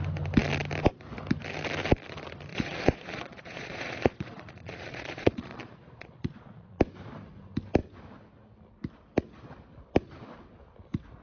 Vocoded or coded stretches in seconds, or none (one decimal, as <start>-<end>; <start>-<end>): 2.5-6.8